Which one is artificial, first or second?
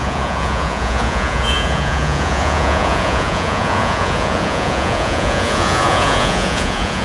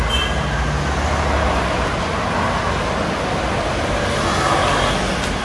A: first